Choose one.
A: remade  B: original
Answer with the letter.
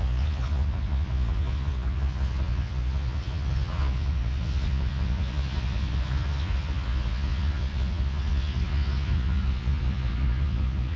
A